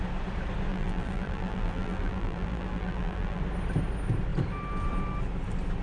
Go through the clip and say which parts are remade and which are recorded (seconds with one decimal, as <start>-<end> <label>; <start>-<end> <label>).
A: 0.0-0.7 recorded; 0.7-3.4 remade; 3.4-5.8 recorded